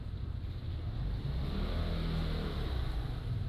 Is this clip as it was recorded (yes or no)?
yes